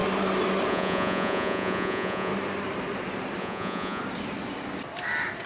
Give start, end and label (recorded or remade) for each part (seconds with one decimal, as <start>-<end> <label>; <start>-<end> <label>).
0.0-0.7 recorded; 0.7-2.3 remade; 2.3-3.4 recorded; 3.4-4.0 remade; 4.0-5.5 recorded